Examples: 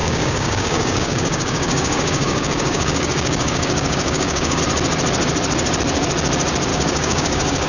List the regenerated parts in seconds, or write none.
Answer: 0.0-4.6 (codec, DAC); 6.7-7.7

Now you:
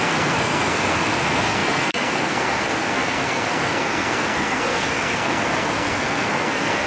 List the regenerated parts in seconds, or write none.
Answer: 0.0-6.9 (codec, SNAC)

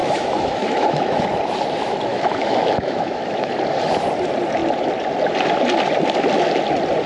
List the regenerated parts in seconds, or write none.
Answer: 0.0-1.2 (autoencoder, DAC-VAE); 2.1-3.5

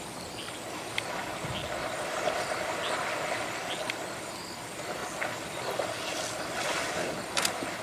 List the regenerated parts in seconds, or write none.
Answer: none

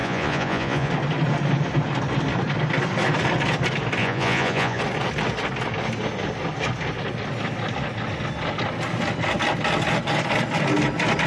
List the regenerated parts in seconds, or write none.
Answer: 0.0-0.9 (vocoder, Vocos); 4.0-4.8